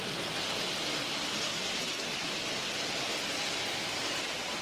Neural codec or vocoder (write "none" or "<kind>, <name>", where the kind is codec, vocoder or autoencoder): none